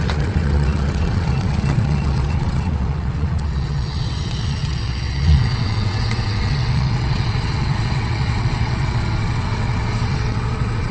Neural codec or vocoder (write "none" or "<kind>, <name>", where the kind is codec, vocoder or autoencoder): vocoder, WaveNeXt